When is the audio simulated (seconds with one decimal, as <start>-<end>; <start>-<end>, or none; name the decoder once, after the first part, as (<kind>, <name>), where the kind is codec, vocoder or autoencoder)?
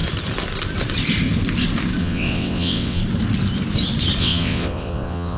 2.0-3.0 (vocoder, WaveNeXt); 4.2-5.4